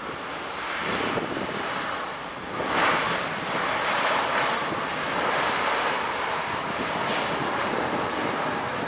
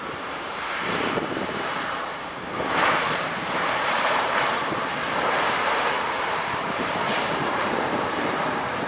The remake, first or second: second